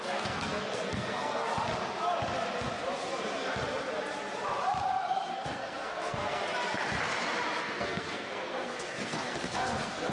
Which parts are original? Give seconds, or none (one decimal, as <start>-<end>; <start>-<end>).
1.5-5.3; 6.4-7.6